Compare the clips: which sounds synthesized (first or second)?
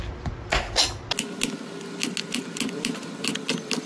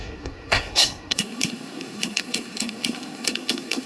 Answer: second